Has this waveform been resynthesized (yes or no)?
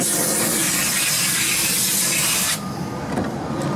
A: no